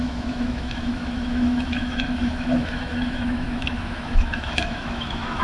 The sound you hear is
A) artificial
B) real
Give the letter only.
A